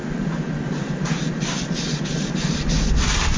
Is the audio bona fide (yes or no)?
yes